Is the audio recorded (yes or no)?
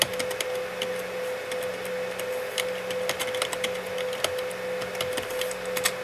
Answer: yes